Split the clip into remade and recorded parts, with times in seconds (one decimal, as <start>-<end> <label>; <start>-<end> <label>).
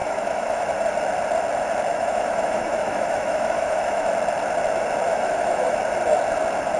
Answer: 0.0-0.6 remade; 0.6-1.9 recorded; 1.9-4.1 remade; 4.1-5.1 recorded; 5.1-5.8 remade; 5.8-6.8 recorded